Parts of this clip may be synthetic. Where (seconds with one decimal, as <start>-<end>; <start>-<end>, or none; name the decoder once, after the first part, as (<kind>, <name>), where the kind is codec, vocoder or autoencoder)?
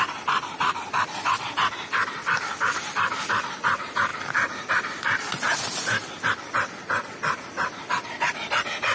none